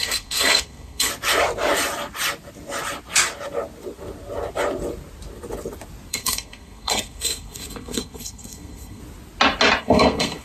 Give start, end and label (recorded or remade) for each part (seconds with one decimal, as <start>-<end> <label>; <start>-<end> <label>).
0.0-1.1 remade; 1.1-6.1 recorded; 6.1-9.0 remade; 9.0-9.8 recorded; 9.8-10.4 remade